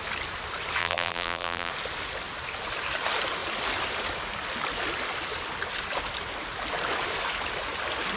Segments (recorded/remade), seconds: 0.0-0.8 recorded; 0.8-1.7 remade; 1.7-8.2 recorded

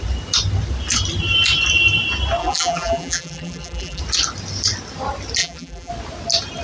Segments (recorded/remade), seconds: 0.0-2.4 recorded; 2.4-4.0 remade; 4.0-5.4 recorded; 5.4-5.9 remade; 5.9-6.6 recorded

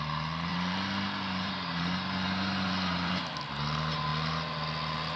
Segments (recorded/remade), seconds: 0.0-0.5 recorded; 0.5-3.1 remade; 3.1-5.2 recorded

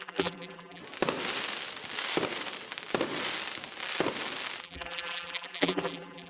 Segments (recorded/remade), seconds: 0.0-0.8 remade; 0.8-4.6 recorded; 4.6-6.3 remade

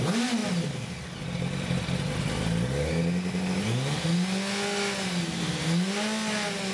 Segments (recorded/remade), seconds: 0.0-6.7 recorded